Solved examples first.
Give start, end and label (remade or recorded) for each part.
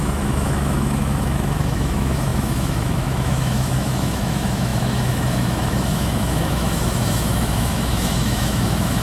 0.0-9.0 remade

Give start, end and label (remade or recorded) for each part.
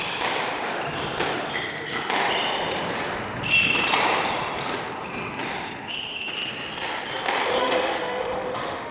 0.0-7.6 recorded; 7.6-8.9 remade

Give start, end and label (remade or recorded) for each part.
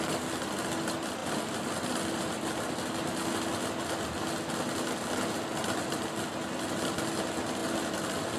0.0-8.4 recorded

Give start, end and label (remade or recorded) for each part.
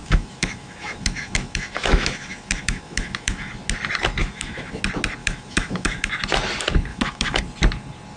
0.0-3.5 remade; 3.5-4.2 recorded; 4.2-4.8 remade; 4.8-5.2 recorded; 5.2-6.1 remade; 6.1-6.9 recorded; 6.9-7.4 remade; 7.4-8.2 recorded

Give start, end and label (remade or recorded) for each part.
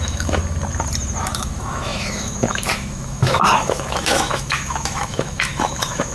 0.0-0.4 remade; 0.4-1.2 recorded; 1.2-6.1 remade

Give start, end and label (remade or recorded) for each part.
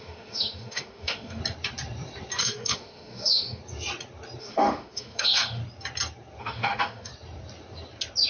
0.0-1.4 remade; 1.4-2.4 recorded; 2.4-3.6 remade; 3.6-4.4 recorded; 4.4-5.6 remade; 5.6-6.4 recorded; 6.4-7.1 remade; 7.1-8.3 recorded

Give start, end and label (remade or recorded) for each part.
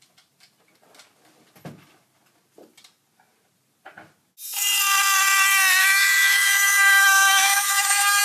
0.0-5.8 recorded; 5.8-8.2 remade